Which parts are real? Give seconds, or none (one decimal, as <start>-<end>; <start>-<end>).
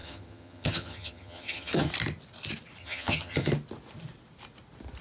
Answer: 1.9-2.8; 3.5-5.0